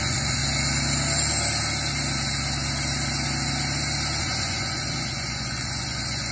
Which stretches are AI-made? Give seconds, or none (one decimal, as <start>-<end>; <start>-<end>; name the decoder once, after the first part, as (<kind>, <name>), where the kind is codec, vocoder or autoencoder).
0.0-0.4 (vocoder, Vocos); 4.2-6.3